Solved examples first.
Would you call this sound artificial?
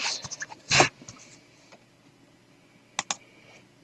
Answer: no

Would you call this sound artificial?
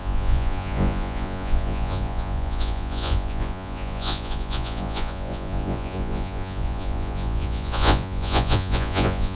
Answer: yes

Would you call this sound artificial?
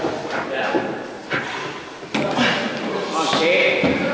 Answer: no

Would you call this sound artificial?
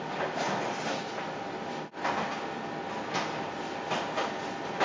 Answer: no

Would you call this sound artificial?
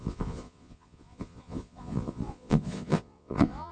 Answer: yes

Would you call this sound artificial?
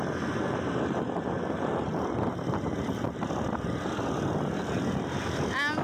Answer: no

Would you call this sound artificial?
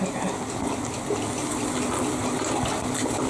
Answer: no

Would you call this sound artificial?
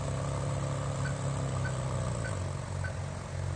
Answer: no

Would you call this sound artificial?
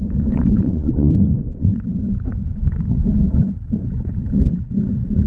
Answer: yes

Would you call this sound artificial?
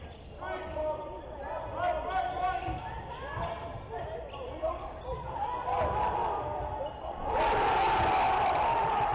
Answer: no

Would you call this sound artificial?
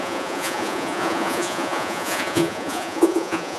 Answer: yes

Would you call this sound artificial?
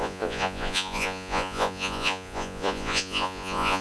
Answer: yes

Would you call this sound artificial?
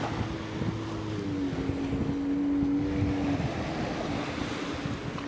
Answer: no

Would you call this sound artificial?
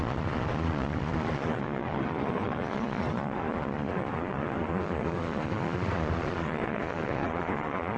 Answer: yes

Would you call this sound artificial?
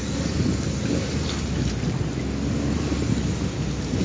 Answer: no